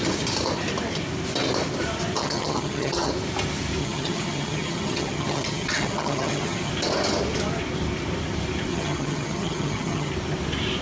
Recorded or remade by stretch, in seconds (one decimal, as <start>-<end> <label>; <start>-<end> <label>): 0.0-2.2 recorded; 2.2-3.1 remade; 3.1-3.8 recorded; 3.8-6.7 remade; 6.7-8.7 recorded; 8.7-10.1 remade; 10.1-10.8 recorded